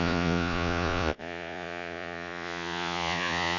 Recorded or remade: remade